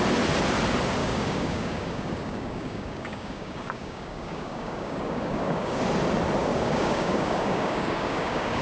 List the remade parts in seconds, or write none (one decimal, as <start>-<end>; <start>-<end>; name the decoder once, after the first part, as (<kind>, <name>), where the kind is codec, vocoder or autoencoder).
1.0-5.8 (codec, DAC); 6.4-8.6